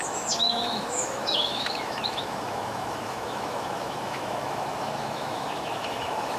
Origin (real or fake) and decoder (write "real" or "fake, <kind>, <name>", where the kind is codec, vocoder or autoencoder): fake, autoencoder, DAC-VAE